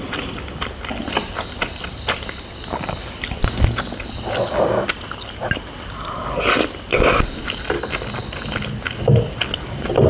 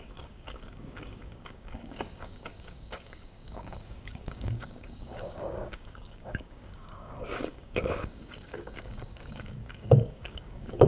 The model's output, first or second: second